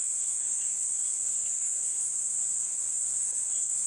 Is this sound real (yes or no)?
no